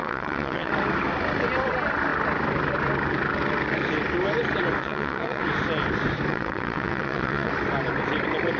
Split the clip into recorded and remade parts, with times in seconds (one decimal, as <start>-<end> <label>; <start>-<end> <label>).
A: 0.0-0.7 remade; 0.7-4.8 recorded; 4.8-5.4 remade; 5.4-6.3 recorded; 6.3-7.5 remade; 7.5-8.6 recorded